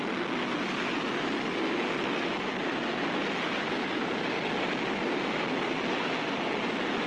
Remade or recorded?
recorded